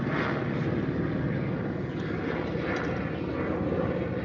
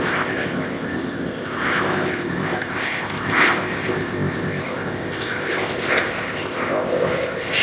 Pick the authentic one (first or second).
first